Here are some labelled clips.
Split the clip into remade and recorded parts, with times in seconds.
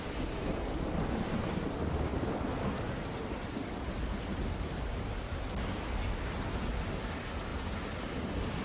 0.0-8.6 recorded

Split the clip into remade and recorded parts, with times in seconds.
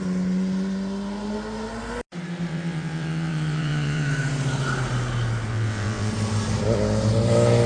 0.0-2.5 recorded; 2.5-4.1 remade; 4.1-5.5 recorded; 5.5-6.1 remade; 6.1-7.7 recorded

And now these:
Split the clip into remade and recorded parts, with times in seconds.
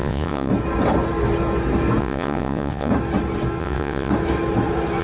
0.0-0.5 remade; 0.5-2.0 recorded; 2.0-2.9 remade; 2.9-3.6 recorded; 3.6-4.1 remade; 4.1-5.0 recorded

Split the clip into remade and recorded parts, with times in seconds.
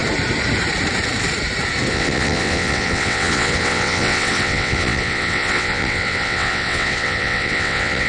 0.0-1.9 recorded; 1.9-8.1 remade